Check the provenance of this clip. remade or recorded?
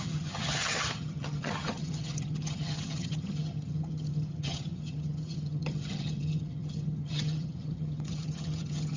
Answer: remade